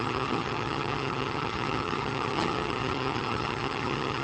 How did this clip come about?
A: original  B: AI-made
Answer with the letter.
B